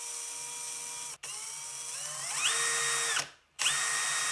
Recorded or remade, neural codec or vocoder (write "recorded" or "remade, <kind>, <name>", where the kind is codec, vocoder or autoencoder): recorded